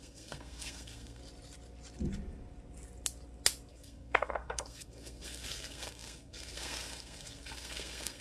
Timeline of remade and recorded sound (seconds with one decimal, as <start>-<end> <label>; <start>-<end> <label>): 0.0-1.2 remade; 1.2-3.7 recorded; 3.7-8.2 remade

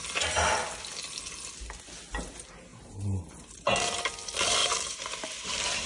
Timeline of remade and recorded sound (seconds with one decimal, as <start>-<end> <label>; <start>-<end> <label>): 0.0-2.7 recorded; 2.7-3.8 remade; 3.8-4.6 recorded; 4.6-5.9 remade

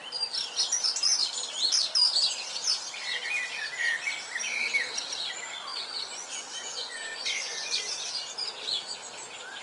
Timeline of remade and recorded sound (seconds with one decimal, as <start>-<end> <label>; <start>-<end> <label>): 0.0-5.7 recorded; 5.7-7.8 remade; 7.8-9.6 recorded

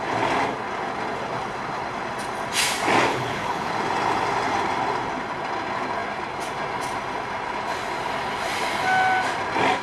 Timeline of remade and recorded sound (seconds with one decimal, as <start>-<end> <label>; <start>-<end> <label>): 0.0-3.1 recorded; 3.1-3.7 remade; 3.7-9.8 recorded

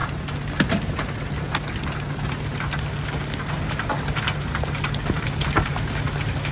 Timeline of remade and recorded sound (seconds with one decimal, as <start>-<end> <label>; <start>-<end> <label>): 0.0-6.5 recorded

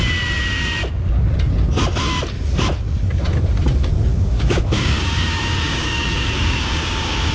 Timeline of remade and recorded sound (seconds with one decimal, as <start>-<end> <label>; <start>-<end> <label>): 0.0-4.1 recorded; 4.1-7.3 remade